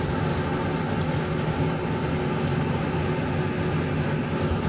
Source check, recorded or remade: recorded